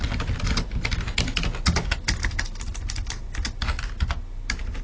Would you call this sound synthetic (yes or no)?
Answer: no